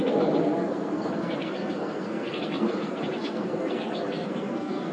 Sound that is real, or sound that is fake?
fake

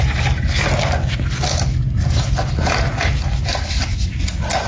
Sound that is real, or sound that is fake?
real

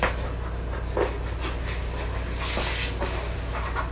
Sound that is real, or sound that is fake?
real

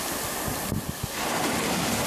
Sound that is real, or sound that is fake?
real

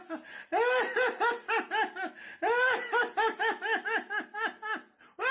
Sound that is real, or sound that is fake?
real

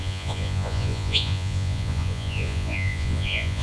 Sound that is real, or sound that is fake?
fake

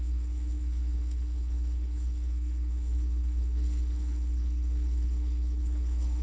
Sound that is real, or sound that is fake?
fake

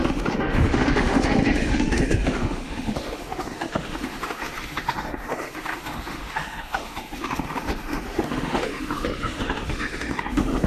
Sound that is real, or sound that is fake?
fake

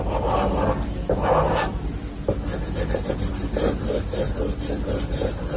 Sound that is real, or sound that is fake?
real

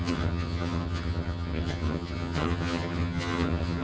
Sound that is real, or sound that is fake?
fake